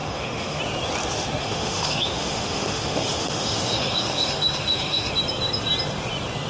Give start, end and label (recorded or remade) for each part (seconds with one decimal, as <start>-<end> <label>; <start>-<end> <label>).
0.0-0.6 remade; 0.6-1.4 recorded; 1.4-5.1 remade; 5.1-6.5 recorded